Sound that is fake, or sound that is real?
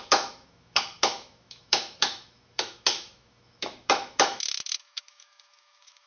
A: fake